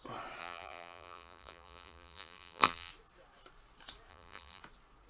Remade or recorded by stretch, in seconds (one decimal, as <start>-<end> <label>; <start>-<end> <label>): 0.0-0.4 recorded; 0.4-2.9 remade; 2.9-4.1 recorded; 4.1-4.6 remade; 4.6-5.1 recorded